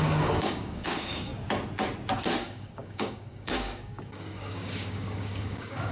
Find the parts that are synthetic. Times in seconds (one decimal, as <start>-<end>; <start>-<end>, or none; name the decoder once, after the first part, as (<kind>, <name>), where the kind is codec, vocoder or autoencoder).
0.0-1.3 (codec, DAC); 2.4-5.9